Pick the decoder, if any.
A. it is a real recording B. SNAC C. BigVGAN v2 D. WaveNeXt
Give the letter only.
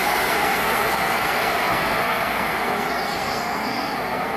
B